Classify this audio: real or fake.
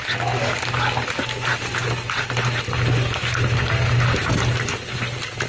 real